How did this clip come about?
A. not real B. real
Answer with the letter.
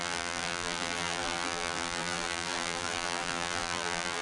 A